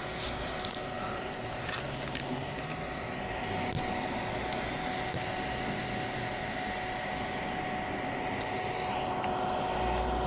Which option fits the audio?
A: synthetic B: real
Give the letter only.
B